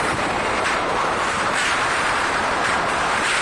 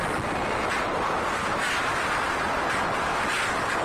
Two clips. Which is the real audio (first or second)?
second